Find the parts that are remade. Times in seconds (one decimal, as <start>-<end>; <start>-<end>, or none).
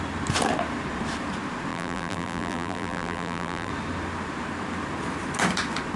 1.7-3.7